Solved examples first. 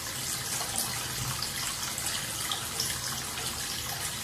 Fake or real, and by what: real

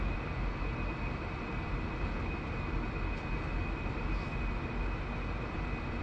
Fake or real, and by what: real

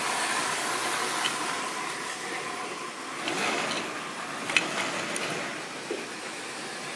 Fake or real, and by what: real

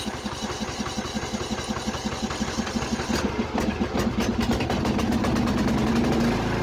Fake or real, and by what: real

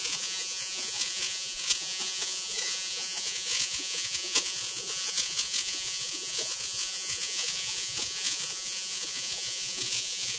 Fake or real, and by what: fake, vocoder, Vocos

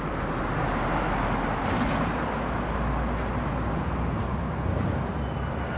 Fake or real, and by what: real